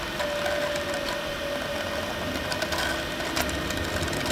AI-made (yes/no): no